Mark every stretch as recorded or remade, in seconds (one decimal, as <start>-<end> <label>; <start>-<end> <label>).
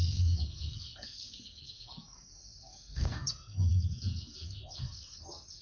0.0-5.6 remade